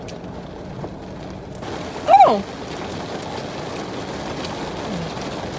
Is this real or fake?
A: real